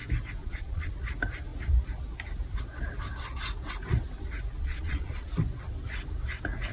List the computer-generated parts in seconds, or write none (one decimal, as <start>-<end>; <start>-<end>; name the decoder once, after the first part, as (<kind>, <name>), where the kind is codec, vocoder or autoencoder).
0.4-0.9 (vocoder, Vocos); 4.6-5.3